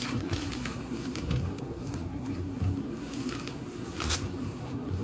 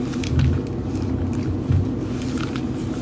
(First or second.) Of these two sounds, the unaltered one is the second